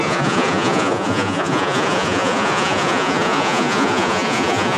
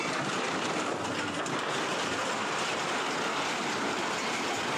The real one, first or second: second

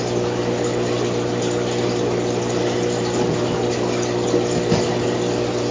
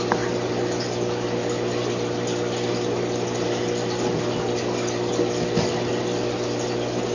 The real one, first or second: second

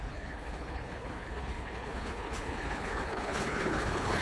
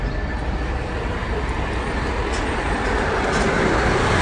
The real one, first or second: second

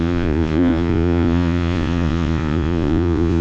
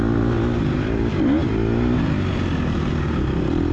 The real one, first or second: second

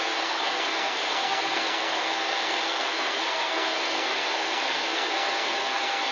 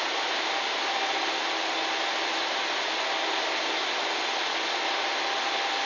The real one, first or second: second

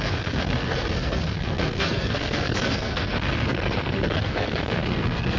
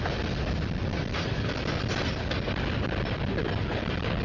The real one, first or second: second